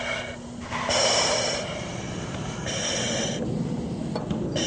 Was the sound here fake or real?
real